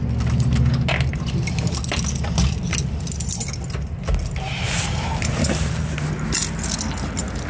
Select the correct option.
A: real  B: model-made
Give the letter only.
A